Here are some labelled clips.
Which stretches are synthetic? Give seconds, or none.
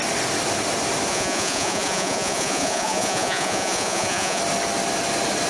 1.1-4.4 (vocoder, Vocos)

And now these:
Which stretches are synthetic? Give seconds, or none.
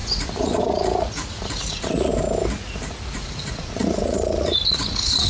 0.0-2.1 (vocoder, Vocos); 2.9-5.3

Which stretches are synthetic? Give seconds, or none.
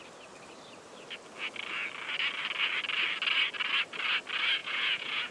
4.6-5.3 (vocoder, Vocos)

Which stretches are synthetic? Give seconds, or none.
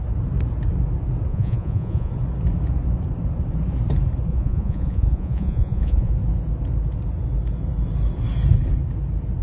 1.3-2.1 (vocoder, Vocos); 4.3-6.1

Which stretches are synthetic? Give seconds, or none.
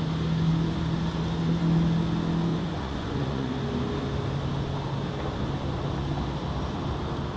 2.5-3.5 (vocoder, Vocos)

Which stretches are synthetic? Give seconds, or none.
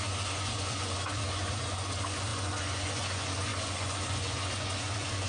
0.0-5.3 (vocoder, Vocos)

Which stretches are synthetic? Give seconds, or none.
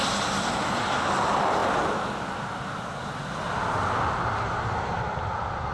none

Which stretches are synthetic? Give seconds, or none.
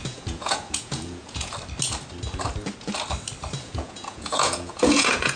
0.0-1.5 (vocoder, Vocos); 3.6-5.4